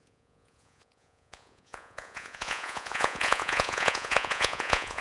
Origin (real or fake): fake